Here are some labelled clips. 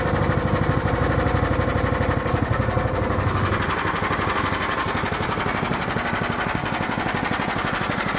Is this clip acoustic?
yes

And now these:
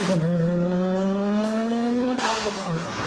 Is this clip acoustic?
no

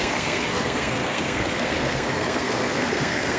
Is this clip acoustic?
no